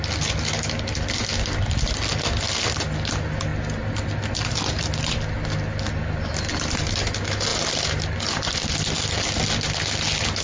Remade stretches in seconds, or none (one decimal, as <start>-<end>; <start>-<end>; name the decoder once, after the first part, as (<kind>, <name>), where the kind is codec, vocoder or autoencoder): none